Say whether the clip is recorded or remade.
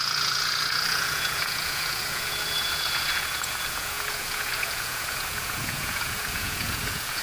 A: remade